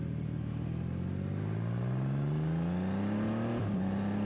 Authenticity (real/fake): real